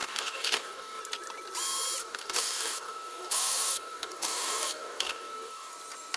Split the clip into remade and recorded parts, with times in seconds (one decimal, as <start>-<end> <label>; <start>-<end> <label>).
0.0-1.0 remade; 1.0-2.0 recorded; 2.0-5.7 remade; 5.7-6.2 recorded